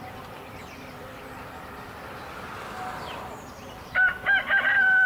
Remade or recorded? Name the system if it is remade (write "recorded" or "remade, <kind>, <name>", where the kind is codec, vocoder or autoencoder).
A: remade, vocoder, BigVGAN v2